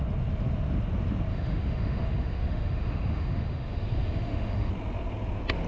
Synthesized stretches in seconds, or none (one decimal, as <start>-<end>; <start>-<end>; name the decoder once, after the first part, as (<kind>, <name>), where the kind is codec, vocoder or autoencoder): 1.3-4.7 (autoencoder, DAC-VAE)